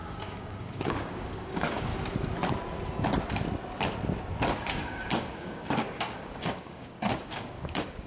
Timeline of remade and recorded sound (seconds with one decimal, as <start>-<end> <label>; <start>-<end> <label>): 0.0-1.9 remade; 1.9-4.6 recorded; 4.6-8.1 remade